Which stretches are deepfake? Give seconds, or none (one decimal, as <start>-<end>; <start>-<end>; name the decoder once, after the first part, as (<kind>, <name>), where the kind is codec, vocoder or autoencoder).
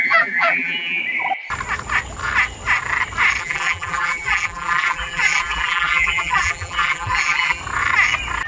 0.0-1.0 (vocoder, BigVGAN v2); 3.4-7.6